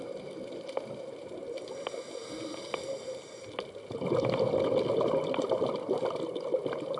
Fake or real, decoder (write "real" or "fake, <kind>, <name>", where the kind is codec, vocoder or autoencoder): real